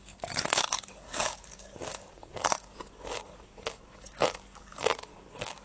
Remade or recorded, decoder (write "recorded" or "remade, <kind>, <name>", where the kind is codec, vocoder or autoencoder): remade, codec, DAC